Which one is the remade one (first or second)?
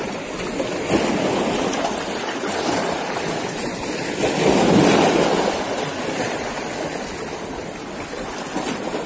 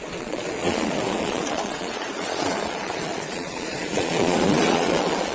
second